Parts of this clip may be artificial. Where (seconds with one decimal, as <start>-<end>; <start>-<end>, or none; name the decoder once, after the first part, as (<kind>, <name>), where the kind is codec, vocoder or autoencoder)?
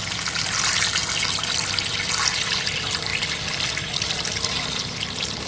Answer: none